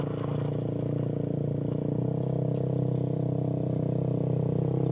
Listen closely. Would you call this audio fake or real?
real